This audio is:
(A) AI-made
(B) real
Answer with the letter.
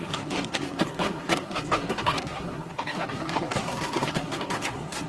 A